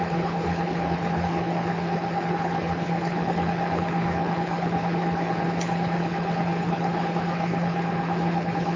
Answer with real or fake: fake